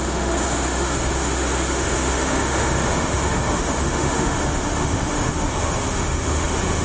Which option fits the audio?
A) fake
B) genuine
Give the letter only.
A